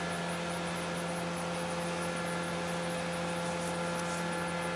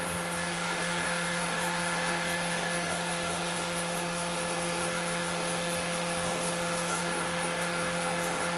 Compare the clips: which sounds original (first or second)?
first